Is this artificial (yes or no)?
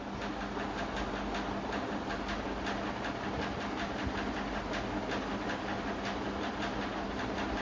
no